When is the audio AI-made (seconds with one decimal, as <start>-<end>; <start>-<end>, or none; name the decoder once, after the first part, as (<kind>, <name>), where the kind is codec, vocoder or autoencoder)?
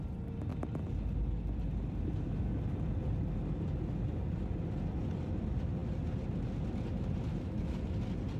7.3-7.8 (autoencoder, DAC-VAE)